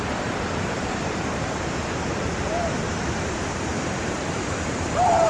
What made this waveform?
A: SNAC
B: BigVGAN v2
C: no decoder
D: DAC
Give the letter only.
B